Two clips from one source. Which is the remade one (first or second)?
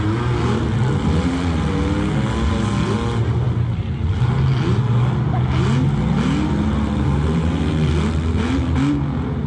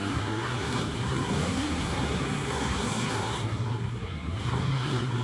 second